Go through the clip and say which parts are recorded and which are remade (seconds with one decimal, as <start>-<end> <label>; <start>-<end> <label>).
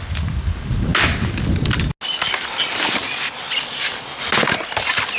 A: 0.0-5.2 recorded